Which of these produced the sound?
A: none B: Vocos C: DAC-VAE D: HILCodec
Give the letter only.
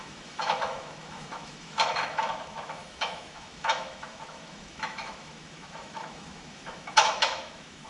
C